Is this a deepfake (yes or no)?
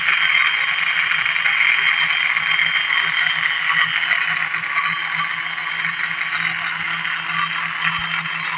no